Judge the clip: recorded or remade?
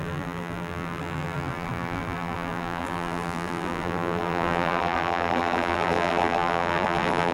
remade